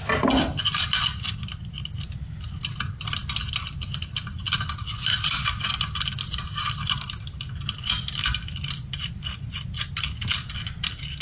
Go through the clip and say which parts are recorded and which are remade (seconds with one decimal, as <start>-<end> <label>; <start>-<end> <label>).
0.0-11.2 recorded